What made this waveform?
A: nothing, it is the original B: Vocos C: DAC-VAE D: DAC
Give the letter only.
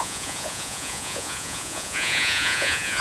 B